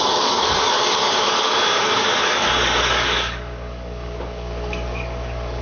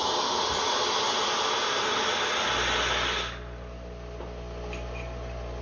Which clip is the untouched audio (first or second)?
second